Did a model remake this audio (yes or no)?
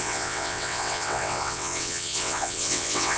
yes